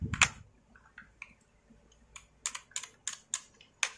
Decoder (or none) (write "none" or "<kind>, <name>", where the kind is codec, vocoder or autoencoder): none